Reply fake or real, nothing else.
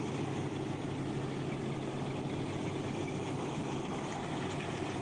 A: real